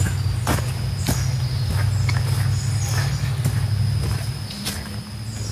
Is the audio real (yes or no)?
yes